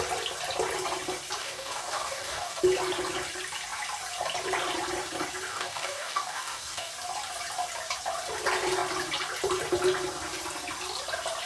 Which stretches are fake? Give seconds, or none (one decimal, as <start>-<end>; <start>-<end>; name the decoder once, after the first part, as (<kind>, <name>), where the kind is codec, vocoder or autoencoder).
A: 1.4-2.6 (codec, DAC); 5.5-6.9